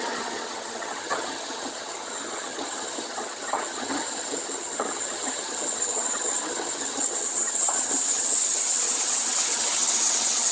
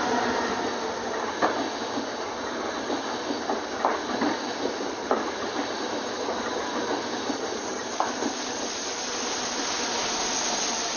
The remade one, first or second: first